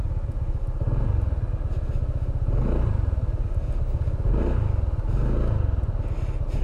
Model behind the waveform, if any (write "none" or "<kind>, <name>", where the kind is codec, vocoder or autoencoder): none